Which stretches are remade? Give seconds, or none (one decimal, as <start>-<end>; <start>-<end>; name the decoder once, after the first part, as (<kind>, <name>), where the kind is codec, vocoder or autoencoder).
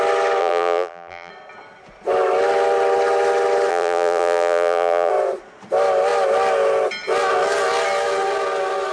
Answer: 0.4-1.3 (vocoder, BigVGAN v2); 3.7-5.1